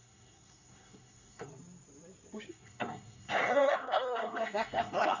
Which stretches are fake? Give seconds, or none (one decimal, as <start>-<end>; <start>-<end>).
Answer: 0.0-1.5; 2.5-5.2

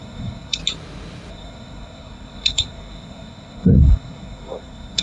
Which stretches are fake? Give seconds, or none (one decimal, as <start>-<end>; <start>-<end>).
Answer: 0.0-0.6; 1.3-5.0

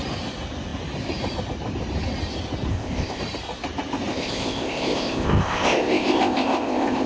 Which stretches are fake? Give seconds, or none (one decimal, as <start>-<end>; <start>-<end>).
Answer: 2.7-3.2; 4.1-7.1

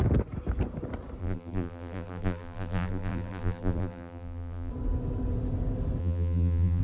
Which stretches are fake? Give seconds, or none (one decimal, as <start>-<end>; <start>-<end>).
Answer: 1.2-4.7; 6.0-6.8

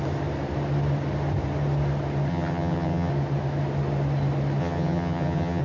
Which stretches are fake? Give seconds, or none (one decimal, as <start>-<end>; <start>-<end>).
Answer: 2.3-3.1; 4.6-5.6

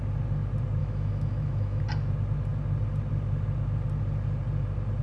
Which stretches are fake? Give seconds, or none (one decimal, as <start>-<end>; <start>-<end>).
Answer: 0.8-1.8

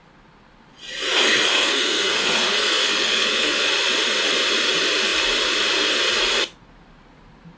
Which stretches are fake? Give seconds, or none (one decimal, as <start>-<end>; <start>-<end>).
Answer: 1.5-3.7